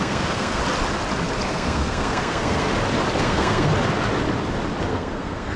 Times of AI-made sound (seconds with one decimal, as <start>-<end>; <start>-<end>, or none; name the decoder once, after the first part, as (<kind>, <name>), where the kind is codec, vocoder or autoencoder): 0.0-0.6 (codec, SNAC); 1.5-2.7; 3.2-3.7; 4.9-5.6